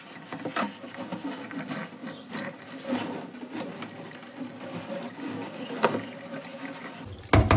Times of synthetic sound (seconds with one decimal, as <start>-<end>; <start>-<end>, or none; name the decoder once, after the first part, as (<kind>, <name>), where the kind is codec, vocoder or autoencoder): none